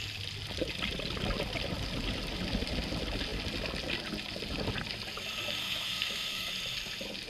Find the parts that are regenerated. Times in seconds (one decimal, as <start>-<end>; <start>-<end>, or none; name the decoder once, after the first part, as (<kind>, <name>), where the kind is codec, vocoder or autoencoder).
5.6-6.5 (codec, SNAC)